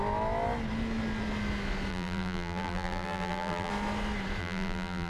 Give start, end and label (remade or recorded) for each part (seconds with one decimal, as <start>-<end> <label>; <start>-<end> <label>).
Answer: 0.0-1.9 recorded; 1.9-3.7 remade; 3.7-4.4 recorded; 4.4-5.1 remade